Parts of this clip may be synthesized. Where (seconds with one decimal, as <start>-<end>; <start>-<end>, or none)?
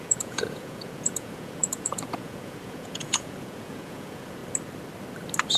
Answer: 0.0-4.4